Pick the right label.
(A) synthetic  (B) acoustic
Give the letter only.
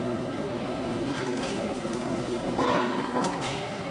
A